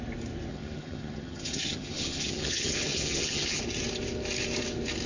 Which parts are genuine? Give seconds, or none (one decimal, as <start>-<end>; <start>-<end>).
0.0-0.5; 3.6-5.1